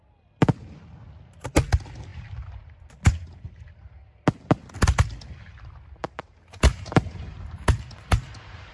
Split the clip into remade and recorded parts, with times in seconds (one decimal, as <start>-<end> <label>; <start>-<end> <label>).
0.0-6.0 recorded; 6.0-8.7 remade